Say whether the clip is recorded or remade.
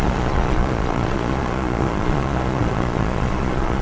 remade